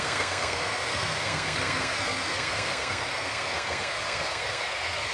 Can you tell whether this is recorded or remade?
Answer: remade